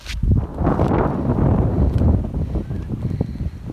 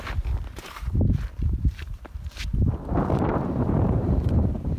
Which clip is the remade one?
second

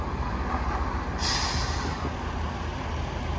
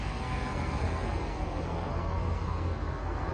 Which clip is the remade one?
second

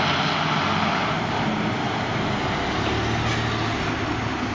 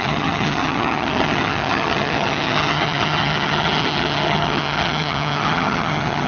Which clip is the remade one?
second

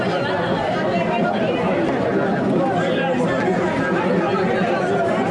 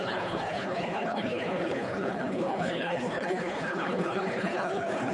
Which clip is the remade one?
second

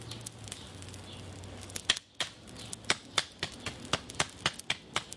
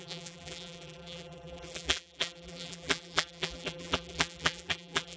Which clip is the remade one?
second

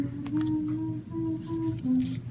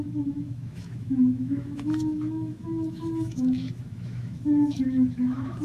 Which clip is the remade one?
second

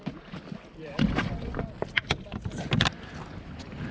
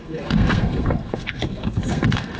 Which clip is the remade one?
second